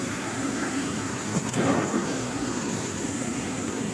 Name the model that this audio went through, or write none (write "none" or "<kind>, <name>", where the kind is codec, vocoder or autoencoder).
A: codec, SNAC